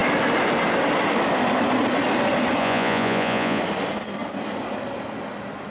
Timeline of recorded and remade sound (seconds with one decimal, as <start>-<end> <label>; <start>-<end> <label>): 0.0-2.6 recorded; 2.6-3.6 remade; 3.6-5.7 recorded